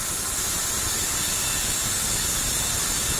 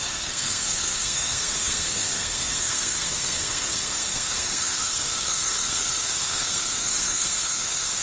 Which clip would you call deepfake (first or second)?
second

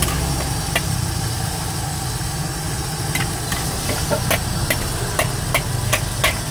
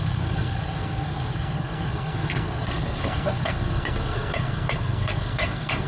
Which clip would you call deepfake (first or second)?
second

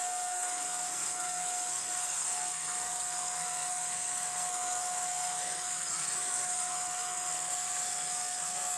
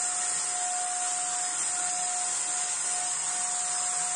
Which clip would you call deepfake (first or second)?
first